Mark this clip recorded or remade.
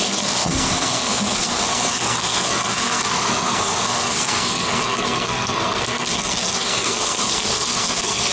remade